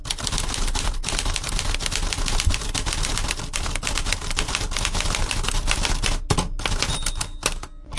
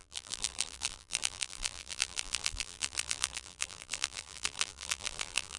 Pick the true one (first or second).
first